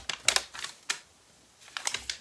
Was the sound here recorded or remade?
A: recorded